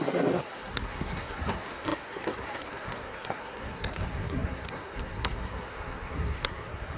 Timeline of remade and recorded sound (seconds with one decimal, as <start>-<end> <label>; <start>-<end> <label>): 0.0-7.0 remade